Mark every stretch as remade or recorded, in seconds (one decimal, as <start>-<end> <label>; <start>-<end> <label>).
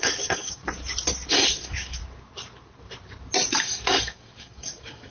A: 0.0-0.6 remade; 0.6-1.3 recorded; 1.3-2.0 remade; 2.0-3.5 recorded; 3.5-5.1 remade